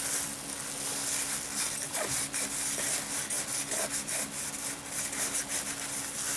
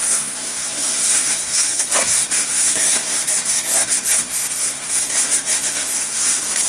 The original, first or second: first